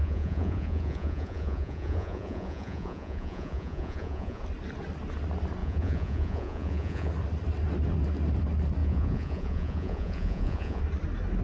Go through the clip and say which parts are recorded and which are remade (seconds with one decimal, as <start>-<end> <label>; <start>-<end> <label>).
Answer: 0.0-4.4 remade; 4.4-5.6 recorded; 5.6-7.1 remade; 7.1-8.8 recorded; 8.8-10.8 remade; 10.8-11.4 recorded